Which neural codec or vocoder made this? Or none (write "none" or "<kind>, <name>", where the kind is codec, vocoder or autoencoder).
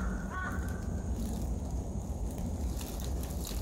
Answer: vocoder, BigVGAN v2